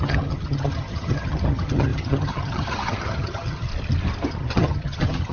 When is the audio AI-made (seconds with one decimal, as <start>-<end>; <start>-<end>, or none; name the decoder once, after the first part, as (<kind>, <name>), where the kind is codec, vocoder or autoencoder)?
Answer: 0.0-3.7 (vocoder, HiFi-GAN); 4.3-5.3